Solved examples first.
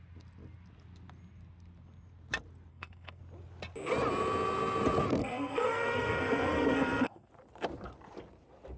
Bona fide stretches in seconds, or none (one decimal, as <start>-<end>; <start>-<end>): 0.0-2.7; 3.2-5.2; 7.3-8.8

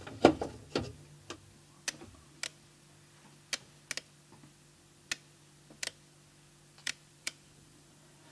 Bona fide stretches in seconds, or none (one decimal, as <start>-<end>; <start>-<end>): 0.0-6.8

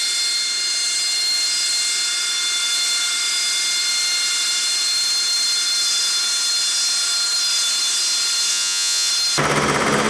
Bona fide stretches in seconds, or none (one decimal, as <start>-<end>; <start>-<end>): 0.0-8.5; 9.1-10.1

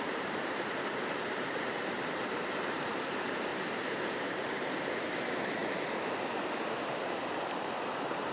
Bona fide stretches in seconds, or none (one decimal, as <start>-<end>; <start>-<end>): 5.6-6.8

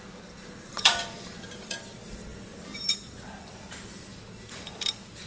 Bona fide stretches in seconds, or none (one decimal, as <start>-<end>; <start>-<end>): 0.0-0.7; 1.8-4.1

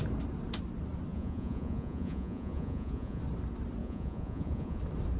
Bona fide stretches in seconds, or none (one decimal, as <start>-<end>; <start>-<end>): 0.0-1.1; 3.2-3.8; 4.8-5.2

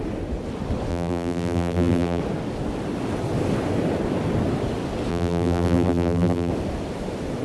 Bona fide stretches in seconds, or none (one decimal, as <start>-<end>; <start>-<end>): 0.0-0.9; 2.2-5.1; 6.5-7.4